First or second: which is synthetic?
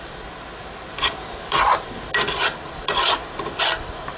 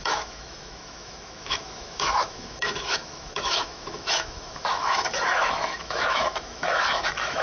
second